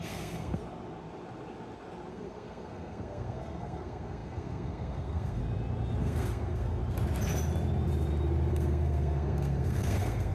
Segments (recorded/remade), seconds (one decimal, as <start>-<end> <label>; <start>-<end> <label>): 0.0-0.6 remade; 0.6-2.1 recorded; 2.1-5.4 remade; 5.4-6.0 recorded; 6.0-6.8 remade; 6.8-8.5 recorded; 8.5-10.3 remade